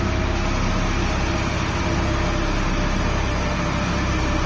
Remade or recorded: recorded